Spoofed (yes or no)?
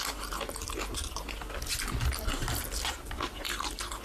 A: no